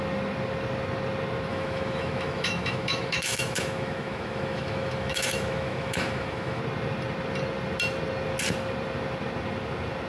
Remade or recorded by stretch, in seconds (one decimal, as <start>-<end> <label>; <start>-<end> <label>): 0.0-1.5 recorded; 1.5-6.6 remade; 6.6-10.1 recorded

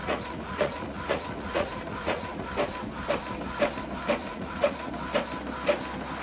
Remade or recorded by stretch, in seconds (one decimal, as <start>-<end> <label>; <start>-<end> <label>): 0.0-2.5 remade; 2.5-4.2 recorded; 4.2-4.9 remade; 4.9-6.2 recorded

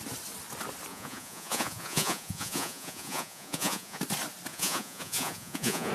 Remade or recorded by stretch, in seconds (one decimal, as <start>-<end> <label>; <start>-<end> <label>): 0.0-0.9 recorded; 0.9-4.0 remade; 4.0-4.5 recorded; 4.5-5.9 remade